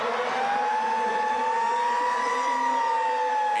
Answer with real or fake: real